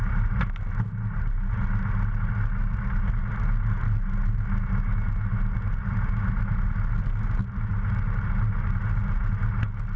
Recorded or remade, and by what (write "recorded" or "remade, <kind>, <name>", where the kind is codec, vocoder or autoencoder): recorded